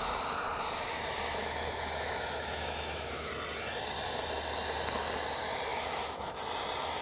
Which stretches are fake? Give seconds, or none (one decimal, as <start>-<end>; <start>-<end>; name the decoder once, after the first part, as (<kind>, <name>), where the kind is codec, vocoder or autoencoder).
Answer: 1.4-3.3 (autoencoder, DAC-VAE); 5.7-6.4